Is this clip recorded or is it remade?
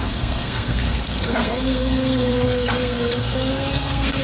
remade